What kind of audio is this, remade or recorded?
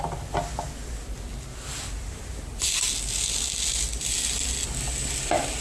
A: recorded